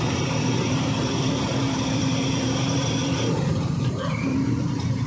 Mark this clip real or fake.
fake